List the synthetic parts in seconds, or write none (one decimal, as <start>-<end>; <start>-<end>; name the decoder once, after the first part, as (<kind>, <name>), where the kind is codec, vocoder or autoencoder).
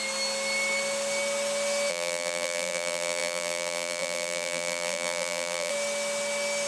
1.9-5.7 (vocoder, BigVGAN v2)